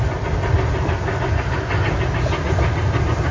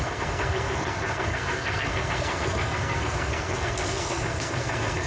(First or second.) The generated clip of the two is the second